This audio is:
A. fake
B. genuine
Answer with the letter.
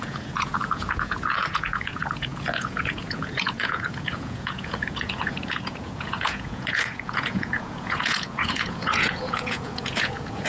A